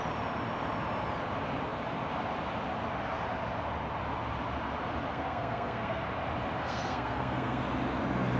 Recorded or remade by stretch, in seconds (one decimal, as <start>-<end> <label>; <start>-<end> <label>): 0.0-5.1 recorded; 5.1-6.0 remade; 6.0-6.6 recorded; 6.6-7.6 remade; 7.6-8.4 recorded